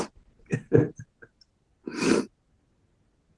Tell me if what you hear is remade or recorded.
recorded